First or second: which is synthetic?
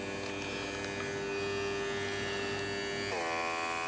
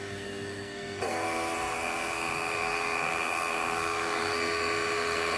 second